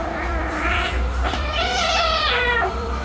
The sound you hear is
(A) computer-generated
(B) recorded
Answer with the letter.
A